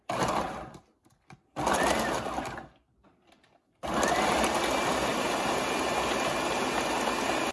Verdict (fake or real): real